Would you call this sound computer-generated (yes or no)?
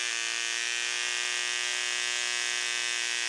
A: no